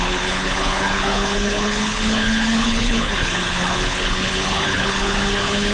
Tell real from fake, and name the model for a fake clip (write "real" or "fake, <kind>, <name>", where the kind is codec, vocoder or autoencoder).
fake, codec, HILCodec